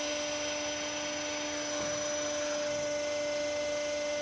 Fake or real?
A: real